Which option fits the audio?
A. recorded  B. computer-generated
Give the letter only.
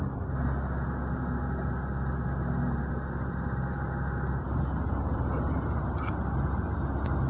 A